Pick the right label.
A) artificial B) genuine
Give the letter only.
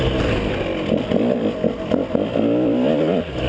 B